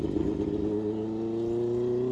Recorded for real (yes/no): yes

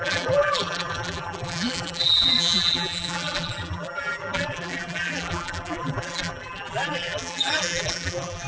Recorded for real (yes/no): no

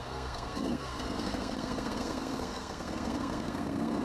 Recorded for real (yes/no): no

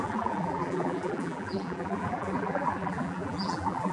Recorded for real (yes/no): no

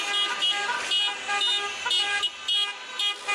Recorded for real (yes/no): yes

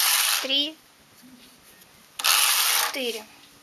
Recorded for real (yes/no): yes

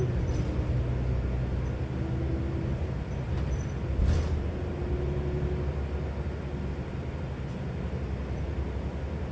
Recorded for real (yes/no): yes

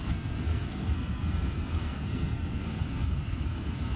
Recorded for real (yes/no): no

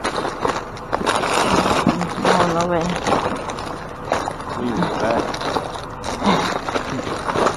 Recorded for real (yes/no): yes